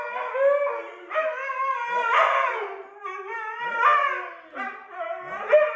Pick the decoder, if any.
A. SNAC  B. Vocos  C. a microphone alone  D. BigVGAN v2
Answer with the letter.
C